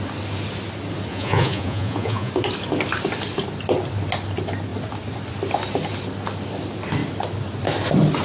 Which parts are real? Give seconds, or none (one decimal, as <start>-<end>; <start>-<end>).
0.0-1.1; 2.3-8.2